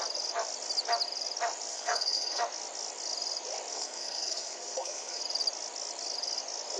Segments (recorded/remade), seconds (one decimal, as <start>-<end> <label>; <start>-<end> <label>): 0.0-1.7 recorded; 1.7-2.4 remade; 2.4-3.7 recorded; 3.7-5.2 remade; 5.2-6.8 recorded